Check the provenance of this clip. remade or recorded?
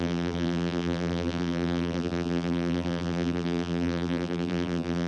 remade